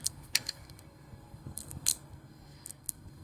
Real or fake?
fake